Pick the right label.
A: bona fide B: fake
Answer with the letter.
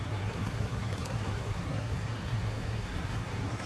B